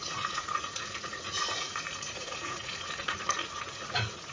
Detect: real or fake fake